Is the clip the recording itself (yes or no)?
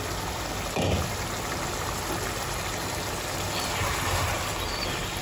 yes